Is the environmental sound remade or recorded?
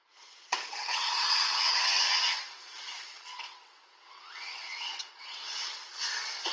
remade